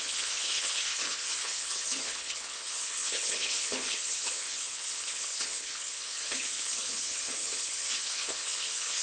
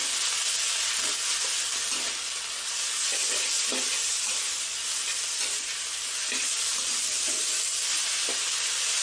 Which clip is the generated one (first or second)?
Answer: first